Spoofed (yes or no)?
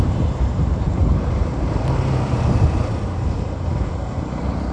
yes